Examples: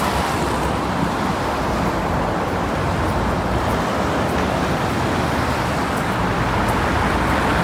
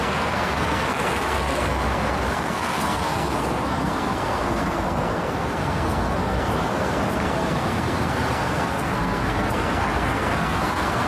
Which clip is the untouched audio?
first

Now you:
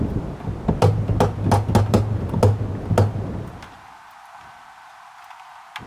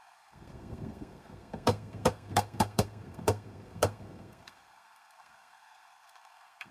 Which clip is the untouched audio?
first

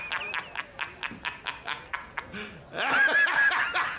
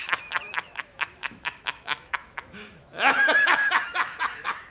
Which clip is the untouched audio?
first